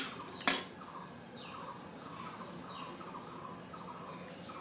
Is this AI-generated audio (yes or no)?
no